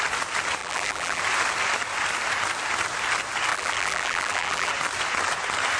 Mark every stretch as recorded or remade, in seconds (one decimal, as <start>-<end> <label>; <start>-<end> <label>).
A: 0.0-0.6 recorded; 0.6-1.2 remade; 1.2-3.5 recorded; 3.5-4.7 remade; 4.7-5.8 recorded